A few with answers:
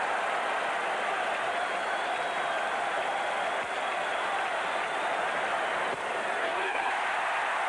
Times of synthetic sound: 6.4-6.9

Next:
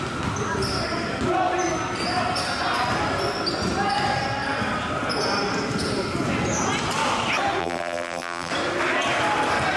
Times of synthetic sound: 7.6-8.5

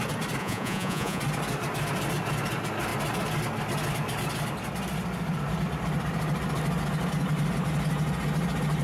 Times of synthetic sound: 0.4-1.2

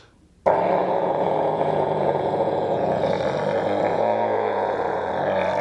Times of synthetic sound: 0.8-3.2; 3.9-5.1